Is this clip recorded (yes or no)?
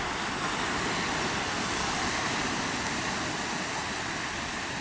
yes